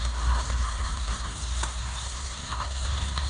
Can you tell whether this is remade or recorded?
remade